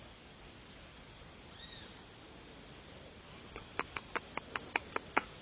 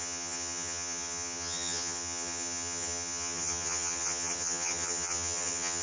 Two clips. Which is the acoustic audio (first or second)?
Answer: first